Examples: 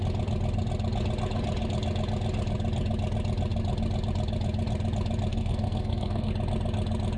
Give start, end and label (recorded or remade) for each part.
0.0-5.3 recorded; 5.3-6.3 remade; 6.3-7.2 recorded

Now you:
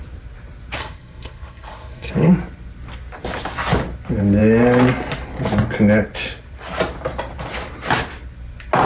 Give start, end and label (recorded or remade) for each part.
0.0-0.8 recorded; 0.8-2.3 remade; 2.3-8.8 recorded

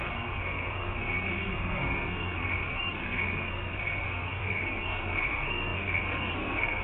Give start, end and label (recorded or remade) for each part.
0.0-6.8 remade